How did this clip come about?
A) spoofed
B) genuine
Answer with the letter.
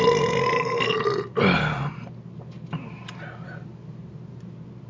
B